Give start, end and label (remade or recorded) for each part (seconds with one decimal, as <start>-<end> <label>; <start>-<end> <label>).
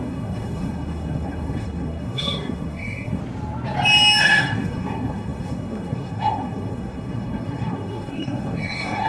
0.0-3.2 remade; 3.2-4.2 recorded; 4.2-9.1 remade